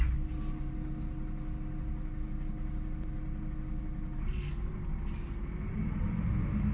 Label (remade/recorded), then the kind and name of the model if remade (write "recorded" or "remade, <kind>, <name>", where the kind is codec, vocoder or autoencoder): recorded